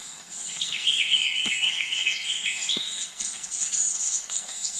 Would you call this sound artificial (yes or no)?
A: yes